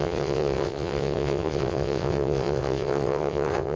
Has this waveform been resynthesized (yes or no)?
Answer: yes